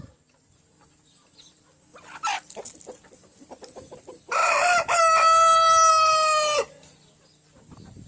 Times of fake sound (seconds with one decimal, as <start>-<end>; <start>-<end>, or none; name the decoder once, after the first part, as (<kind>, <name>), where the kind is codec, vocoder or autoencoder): none